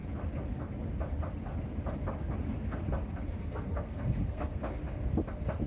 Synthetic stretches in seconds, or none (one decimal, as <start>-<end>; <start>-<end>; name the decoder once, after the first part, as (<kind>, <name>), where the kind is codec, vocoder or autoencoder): 3.4-4.6 (codec, SNAC)